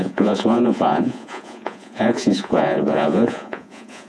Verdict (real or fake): fake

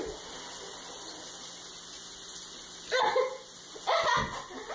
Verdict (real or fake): real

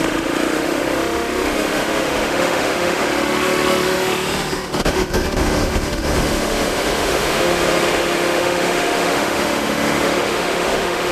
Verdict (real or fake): fake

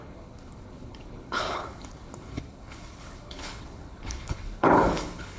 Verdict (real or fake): fake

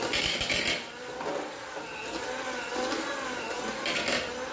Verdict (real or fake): real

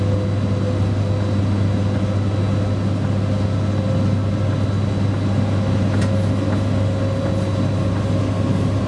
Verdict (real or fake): real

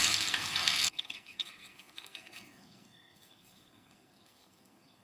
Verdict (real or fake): fake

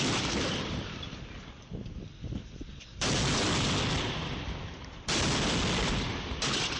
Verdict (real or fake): real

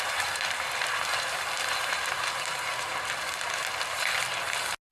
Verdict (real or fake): real